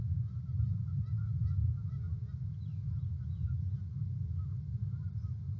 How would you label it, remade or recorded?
recorded